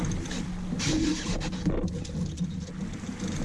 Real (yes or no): yes